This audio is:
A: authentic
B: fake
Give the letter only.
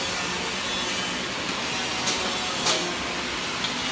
A